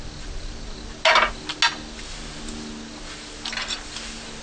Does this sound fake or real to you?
real